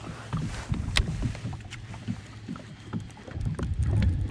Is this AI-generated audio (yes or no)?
yes